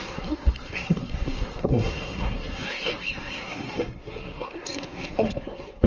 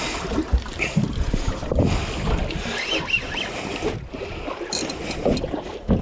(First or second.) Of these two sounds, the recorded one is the second